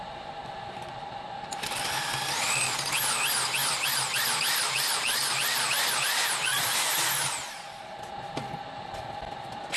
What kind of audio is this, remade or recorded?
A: recorded